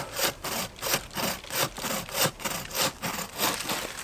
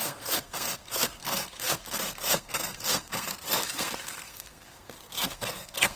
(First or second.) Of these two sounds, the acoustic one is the first